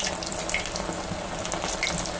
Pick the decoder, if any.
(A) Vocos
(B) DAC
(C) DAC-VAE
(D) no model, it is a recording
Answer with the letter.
D